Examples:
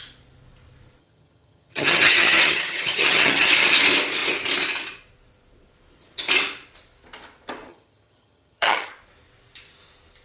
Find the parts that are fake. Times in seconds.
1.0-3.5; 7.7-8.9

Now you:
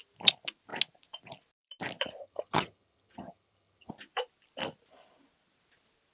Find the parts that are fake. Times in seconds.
2.2-3.9